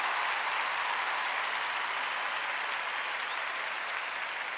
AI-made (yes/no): no